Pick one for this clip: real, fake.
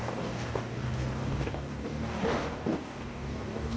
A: fake